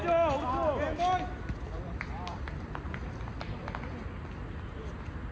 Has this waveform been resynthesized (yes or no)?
no